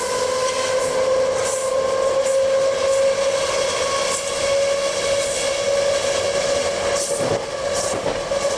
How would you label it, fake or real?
real